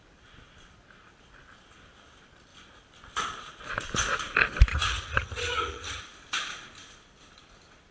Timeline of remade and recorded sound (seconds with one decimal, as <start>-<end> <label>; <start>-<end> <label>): 0.0-4.7 recorded; 4.7-6.0 remade; 6.0-7.9 recorded

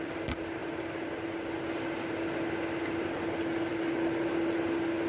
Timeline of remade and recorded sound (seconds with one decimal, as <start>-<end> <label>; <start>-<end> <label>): 0.0-5.1 recorded

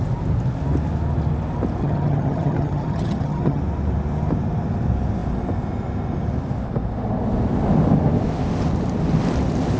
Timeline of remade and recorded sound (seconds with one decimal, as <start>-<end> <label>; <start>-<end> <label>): 0.0-1.8 recorded; 1.8-3.6 remade; 3.6-9.8 recorded

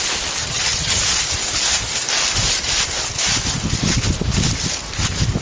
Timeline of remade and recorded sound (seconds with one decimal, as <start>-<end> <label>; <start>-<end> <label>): 0.0-0.4 recorded; 0.4-1.0 remade; 1.0-5.4 recorded

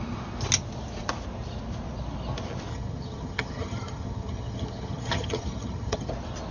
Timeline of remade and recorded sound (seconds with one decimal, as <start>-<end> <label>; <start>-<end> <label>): 0.0-2.7 recorded; 2.7-6.1 remade; 6.1-6.5 recorded